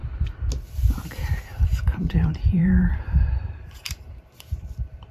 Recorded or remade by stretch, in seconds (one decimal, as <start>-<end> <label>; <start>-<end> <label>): 0.0-1.5 recorded; 1.5-4.6 remade; 4.6-5.1 recorded